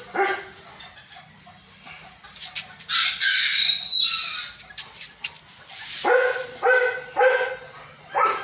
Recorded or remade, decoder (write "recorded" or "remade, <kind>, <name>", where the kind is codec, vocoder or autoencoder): recorded